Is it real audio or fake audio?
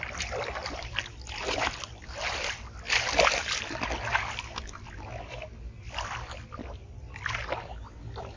real